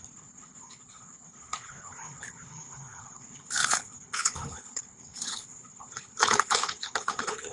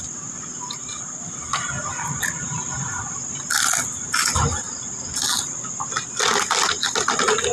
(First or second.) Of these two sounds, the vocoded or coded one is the first